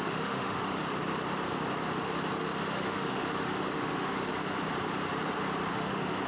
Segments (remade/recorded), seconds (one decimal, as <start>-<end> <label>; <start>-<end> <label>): 0.0-0.8 remade; 0.8-2.6 recorded; 2.6-4.3 remade; 4.3-5.7 recorded; 5.7-6.3 remade